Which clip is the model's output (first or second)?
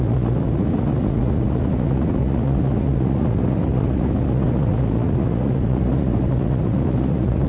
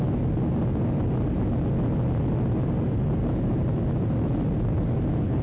first